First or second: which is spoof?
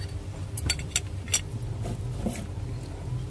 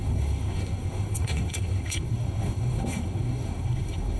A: second